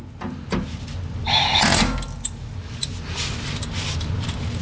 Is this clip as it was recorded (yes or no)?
yes